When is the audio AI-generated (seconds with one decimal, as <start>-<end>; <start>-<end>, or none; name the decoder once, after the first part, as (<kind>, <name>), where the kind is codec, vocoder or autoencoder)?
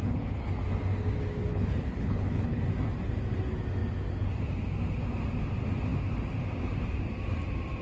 0.0-0.6 (codec, HILCodec); 1.5-2.6